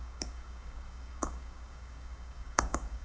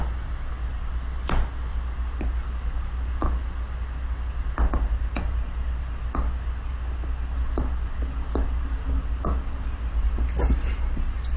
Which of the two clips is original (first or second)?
second